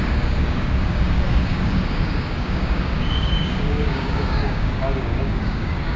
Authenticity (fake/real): fake